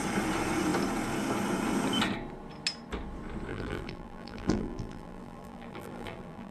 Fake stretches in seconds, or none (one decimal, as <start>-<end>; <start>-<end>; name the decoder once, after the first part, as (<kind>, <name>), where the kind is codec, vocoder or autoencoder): 3.5-6.5 (vocoder, BigVGAN v2)